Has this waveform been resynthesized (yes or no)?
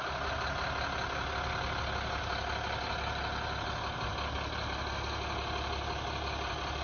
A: no